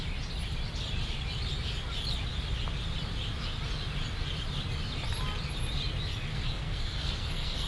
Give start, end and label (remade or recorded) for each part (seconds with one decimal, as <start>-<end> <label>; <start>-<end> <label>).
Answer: 0.0-6.3 recorded; 6.3-7.7 remade